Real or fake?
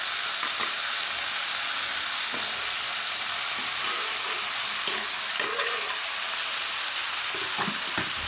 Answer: real